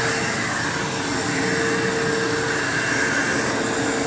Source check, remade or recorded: recorded